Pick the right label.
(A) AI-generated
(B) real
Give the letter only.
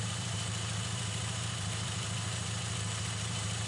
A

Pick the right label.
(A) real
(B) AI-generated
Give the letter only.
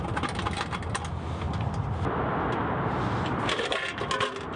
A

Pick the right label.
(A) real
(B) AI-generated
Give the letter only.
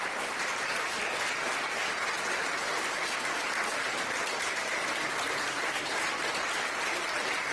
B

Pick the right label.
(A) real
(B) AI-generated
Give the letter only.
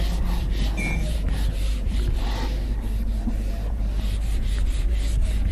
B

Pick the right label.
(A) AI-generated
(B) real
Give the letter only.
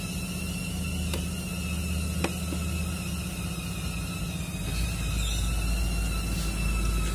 B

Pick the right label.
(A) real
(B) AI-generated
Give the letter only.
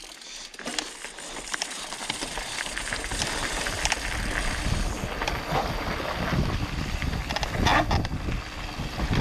A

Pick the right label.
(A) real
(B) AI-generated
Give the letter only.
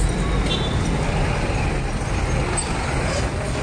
A